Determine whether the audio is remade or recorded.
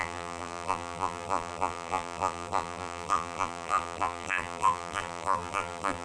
remade